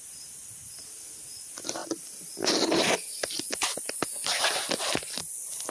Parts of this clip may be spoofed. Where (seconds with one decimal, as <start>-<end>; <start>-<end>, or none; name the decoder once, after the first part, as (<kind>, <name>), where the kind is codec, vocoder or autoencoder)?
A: none